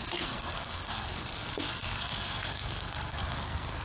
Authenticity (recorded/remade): remade